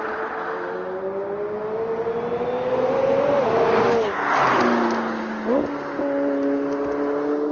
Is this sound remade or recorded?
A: recorded